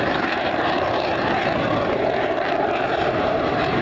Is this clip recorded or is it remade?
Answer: remade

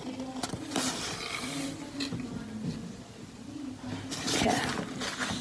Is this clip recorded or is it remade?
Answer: recorded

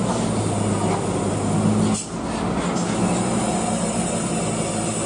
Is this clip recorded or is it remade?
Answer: recorded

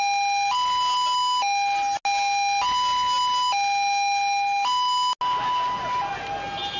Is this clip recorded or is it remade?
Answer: recorded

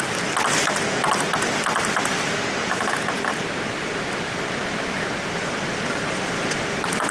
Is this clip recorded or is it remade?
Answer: recorded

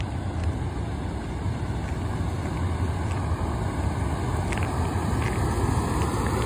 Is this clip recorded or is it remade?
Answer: recorded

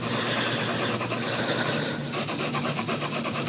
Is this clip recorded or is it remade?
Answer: recorded